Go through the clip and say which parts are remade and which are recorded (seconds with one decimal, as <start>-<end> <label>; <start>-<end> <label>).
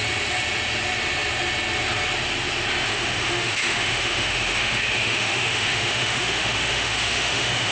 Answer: 0.0-2.9 recorded; 2.9-7.7 remade